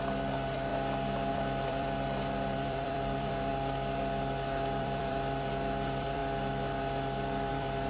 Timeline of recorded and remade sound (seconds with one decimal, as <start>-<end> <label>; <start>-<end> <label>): 0.0-0.7 remade; 0.7-1.3 recorded; 1.3-3.5 remade; 3.5-4.8 recorded; 4.8-6.2 remade; 6.2-7.5 recorded; 7.5-7.9 remade